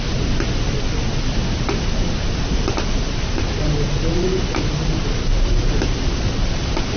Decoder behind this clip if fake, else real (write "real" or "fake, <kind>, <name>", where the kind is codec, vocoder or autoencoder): real